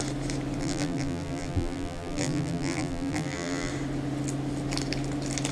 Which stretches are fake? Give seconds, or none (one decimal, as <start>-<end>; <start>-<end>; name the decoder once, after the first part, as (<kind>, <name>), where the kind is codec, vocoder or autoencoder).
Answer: 0.6-3.7 (vocoder, BigVGAN v2)